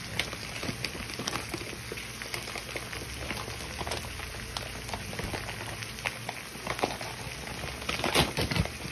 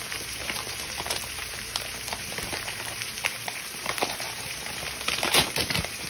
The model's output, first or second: second